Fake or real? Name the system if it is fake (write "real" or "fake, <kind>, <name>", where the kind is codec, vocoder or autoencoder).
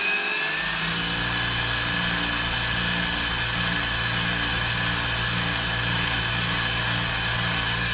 real